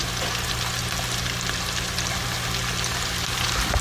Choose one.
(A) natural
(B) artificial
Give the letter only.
A